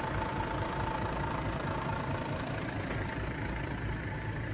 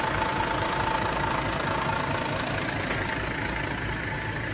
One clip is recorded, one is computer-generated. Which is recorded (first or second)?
second